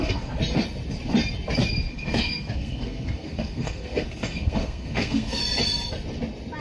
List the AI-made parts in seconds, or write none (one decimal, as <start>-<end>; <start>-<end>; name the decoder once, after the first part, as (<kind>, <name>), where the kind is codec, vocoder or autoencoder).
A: 0.0-0.4 (codec, SNAC); 1.9-5.4

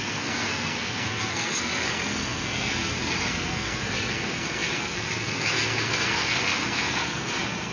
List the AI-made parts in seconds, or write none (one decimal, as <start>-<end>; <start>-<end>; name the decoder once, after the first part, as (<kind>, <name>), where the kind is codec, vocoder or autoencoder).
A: 0.0-7.7 (codec, SNAC)